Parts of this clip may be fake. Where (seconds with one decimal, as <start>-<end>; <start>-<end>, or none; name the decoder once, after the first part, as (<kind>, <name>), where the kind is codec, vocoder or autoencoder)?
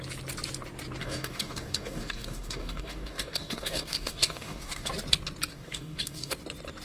1.0-4.9 (codec, DAC); 5.5-6.3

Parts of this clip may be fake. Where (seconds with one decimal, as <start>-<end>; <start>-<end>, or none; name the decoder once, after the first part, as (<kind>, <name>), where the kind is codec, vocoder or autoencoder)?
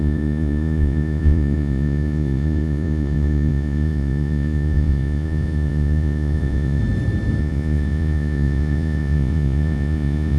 0.0-6.8 (vocoder, Vocos); 7.4-10.4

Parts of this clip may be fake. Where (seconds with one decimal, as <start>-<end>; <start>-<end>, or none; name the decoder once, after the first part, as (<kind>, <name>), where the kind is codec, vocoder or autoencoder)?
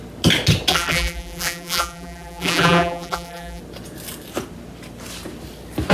0.7-3.6 (vocoder, BigVGAN v2)